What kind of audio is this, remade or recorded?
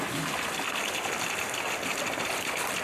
recorded